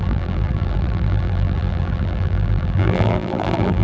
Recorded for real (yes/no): no